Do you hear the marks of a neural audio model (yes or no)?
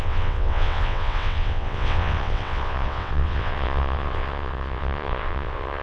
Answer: yes